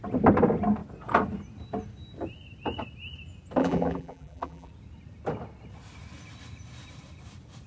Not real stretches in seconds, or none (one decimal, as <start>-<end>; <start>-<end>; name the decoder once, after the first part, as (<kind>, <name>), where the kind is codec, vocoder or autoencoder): 3.6-4.7 (vocoder, BigVGAN v2)